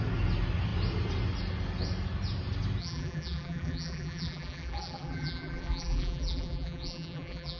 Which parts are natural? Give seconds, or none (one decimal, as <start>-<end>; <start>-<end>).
0.0-2.8